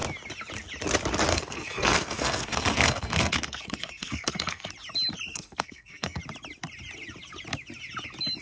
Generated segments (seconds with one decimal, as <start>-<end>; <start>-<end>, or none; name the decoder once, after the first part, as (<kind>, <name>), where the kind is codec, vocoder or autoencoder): 1.3-4.7 (codec, SNAC); 5.3-6.2